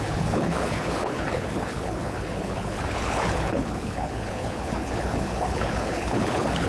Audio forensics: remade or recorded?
remade